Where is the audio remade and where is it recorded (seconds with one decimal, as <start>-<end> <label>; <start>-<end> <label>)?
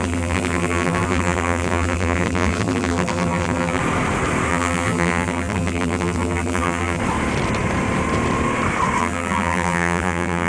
0.0-3.8 remade; 3.8-4.5 recorded; 4.5-7.0 remade; 7.0-9.0 recorded; 9.0-10.5 remade